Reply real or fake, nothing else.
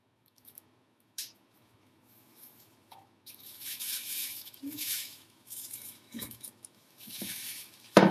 fake